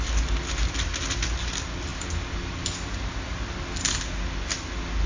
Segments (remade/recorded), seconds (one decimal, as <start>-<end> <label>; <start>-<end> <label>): 0.0-5.1 recorded